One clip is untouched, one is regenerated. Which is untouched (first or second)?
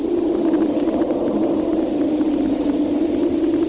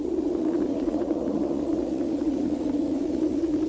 first